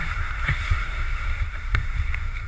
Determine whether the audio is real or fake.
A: fake